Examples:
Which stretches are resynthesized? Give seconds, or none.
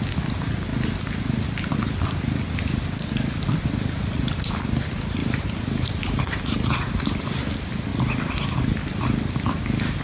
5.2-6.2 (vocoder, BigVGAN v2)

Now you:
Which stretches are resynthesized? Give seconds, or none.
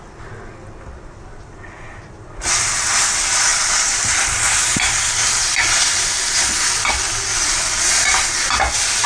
3.5-6.5 (vocoder, BigVGAN v2); 7.3-8.5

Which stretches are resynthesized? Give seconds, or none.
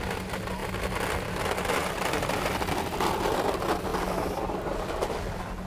none